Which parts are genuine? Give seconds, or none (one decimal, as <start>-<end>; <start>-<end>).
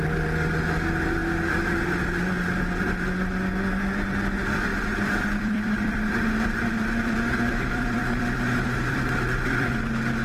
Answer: 0.0-4.7; 9.7-10.2